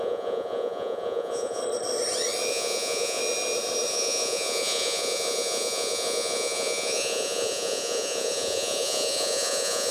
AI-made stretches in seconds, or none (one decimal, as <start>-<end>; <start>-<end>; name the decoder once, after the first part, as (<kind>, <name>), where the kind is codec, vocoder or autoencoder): 0.0-1.6 (vocoder, Vocos); 2.5-3.2; 3.9-9.9